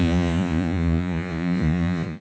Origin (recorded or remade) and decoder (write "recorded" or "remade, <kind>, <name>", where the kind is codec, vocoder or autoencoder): remade, vocoder, Vocos